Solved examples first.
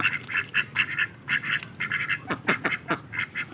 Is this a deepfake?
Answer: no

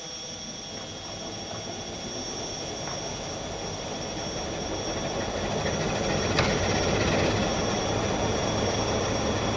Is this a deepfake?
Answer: no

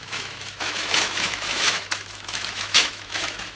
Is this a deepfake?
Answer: yes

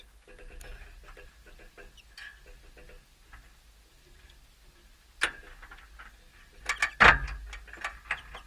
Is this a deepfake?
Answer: no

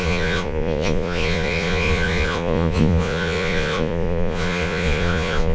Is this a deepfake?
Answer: yes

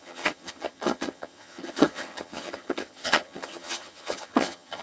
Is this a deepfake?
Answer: yes